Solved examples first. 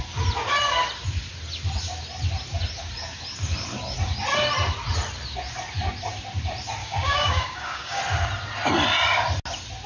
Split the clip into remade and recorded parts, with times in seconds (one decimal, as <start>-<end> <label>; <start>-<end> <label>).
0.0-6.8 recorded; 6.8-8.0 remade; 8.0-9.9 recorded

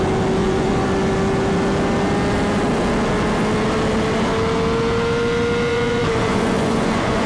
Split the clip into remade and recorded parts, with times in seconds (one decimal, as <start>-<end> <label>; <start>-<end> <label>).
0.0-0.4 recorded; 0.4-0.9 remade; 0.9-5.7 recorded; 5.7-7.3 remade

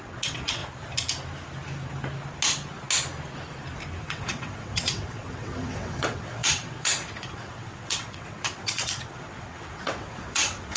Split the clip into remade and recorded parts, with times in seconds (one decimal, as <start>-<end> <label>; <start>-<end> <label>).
0.0-0.6 remade; 0.6-4.0 recorded; 4.0-10.8 remade

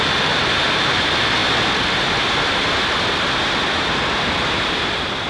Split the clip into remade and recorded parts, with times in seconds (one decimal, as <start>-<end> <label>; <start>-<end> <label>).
0.0-1.4 remade; 1.4-4.6 recorded; 4.6-5.3 remade

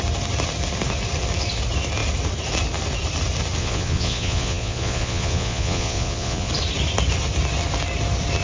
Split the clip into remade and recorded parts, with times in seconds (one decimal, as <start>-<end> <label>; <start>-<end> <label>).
0.0-3.6 recorded; 3.6-6.5 remade; 6.5-8.4 recorded

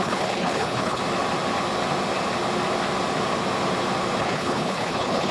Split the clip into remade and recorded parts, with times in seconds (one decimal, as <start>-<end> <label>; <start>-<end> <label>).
0.0-1.0 remade; 1.0-4.2 recorded; 4.2-5.3 remade